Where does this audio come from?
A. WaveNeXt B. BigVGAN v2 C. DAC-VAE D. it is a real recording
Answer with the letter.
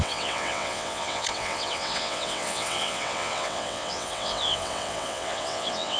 A